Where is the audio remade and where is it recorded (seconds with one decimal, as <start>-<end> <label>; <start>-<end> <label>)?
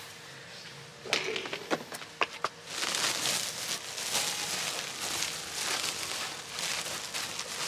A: 0.0-7.7 recorded